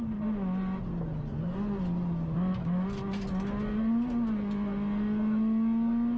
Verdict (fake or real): real